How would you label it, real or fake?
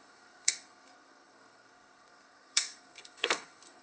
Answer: fake